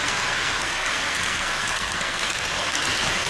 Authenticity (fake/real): fake